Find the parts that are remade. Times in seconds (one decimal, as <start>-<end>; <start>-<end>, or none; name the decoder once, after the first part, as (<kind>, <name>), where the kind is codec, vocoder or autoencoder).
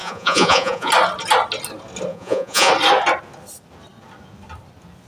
0.0-0.9 (vocoder, Vocos); 2.1-2.7